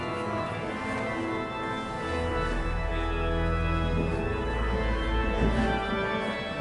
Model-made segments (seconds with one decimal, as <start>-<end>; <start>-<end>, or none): 2.3-2.9; 4.1-5.9